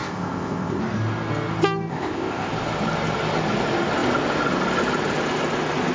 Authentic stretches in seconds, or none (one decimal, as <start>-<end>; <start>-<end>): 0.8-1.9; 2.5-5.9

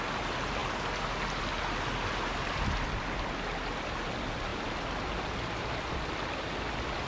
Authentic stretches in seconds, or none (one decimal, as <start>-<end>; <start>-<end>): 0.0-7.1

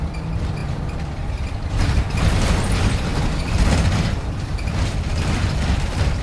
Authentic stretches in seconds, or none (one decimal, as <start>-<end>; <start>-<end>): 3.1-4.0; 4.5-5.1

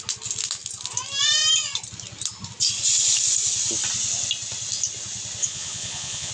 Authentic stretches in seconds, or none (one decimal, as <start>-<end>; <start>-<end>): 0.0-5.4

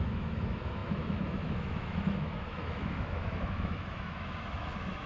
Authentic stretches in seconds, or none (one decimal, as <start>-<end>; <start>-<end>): none

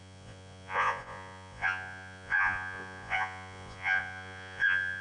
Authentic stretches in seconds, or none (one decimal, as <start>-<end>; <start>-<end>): none